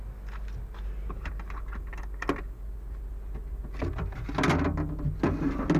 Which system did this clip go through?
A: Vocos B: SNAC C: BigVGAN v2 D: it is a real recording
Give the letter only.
D